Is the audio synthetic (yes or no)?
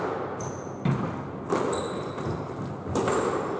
no